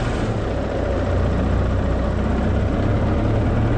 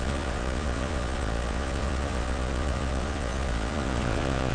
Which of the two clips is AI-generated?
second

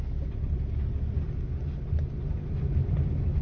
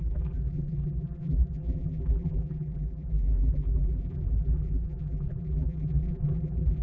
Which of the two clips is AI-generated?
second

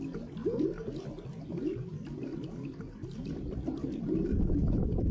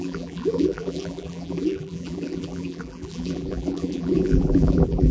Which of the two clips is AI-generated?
second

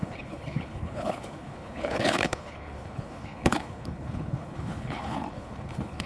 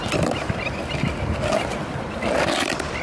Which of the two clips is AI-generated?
first